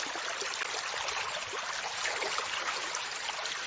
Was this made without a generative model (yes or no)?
yes